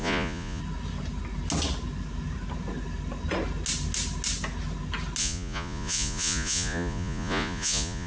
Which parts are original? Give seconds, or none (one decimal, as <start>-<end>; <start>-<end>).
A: 0.6-5.2